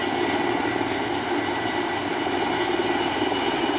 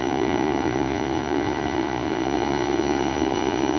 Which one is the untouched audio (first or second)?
first